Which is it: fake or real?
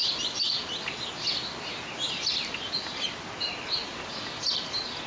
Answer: real